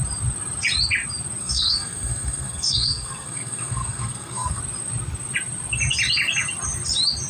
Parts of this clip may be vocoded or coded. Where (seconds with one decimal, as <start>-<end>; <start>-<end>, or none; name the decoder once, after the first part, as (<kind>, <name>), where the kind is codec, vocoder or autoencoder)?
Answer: 1.4-4.6 (codec, SNAC)